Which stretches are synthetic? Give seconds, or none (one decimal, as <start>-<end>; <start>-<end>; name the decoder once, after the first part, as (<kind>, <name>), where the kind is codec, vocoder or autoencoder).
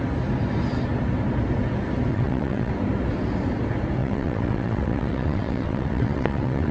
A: 2.1-2.7 (vocoder, WaveNeXt); 4.0-6.7